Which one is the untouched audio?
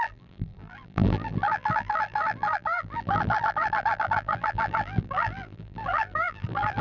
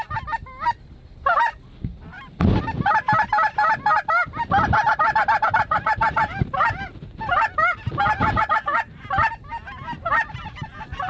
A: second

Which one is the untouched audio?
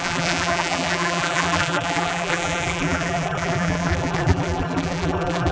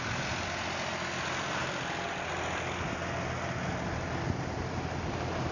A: second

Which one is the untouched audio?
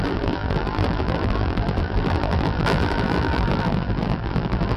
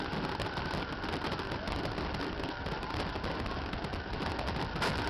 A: second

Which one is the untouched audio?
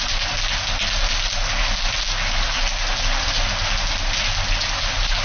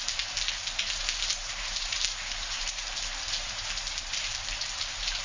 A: first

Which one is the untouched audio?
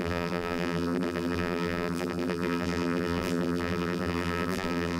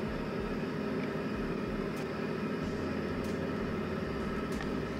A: second